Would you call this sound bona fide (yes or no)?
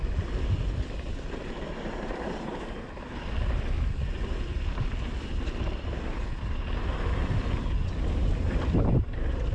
yes